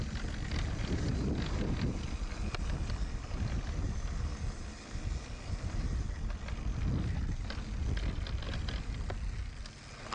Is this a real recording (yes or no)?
yes